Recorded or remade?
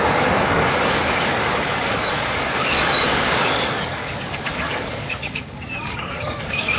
remade